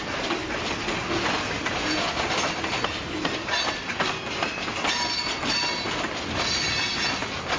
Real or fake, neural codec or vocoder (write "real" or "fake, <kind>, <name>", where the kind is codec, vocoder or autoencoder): real